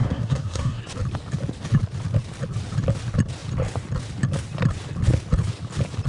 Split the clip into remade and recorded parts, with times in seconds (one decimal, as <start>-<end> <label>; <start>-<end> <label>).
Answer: 0.0-0.8 remade; 0.8-6.1 recorded